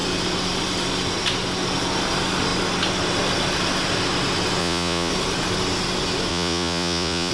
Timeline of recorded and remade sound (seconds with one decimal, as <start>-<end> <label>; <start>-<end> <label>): 0.0-4.6 recorded; 4.6-5.1 remade; 5.1-6.3 recorded; 6.3-7.3 remade